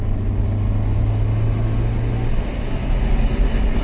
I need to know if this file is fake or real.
real